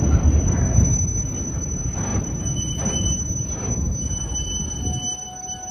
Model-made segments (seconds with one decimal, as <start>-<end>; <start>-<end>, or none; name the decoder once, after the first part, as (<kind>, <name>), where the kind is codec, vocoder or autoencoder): none